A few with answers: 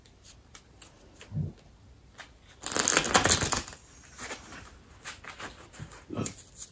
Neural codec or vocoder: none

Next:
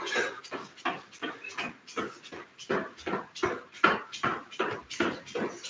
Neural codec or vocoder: none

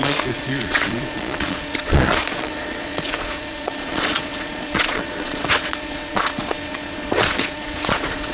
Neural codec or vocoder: vocoder, Vocos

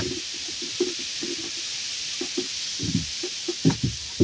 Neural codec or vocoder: none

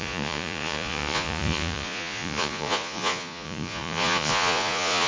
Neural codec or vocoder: vocoder, Vocos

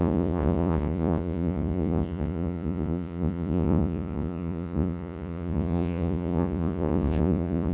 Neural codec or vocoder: vocoder, Vocos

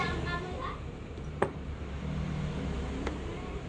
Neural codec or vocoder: none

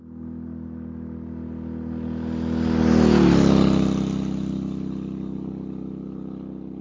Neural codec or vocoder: none